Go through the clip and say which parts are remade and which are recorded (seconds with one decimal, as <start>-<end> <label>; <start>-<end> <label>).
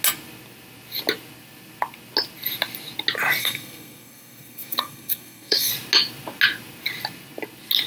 0.0-3.4 recorded; 3.4-5.7 remade; 5.7-7.9 recorded